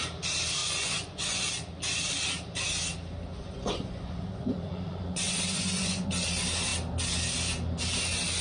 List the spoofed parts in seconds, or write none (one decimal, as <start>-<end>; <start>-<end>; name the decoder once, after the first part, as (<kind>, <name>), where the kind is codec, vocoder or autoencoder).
0.6-1.5 (vocoder, Vocos); 3.3-6.1